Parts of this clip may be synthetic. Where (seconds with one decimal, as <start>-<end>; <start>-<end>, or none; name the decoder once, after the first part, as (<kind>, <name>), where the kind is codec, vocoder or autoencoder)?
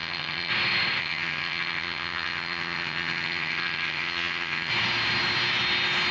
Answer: 0.0-0.5 (vocoder, HiFi-GAN); 1.0-4.7